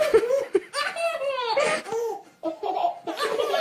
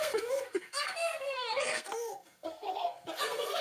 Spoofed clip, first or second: second